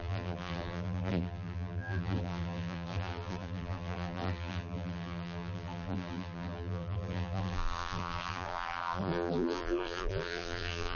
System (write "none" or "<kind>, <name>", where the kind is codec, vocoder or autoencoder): vocoder, BigVGAN v2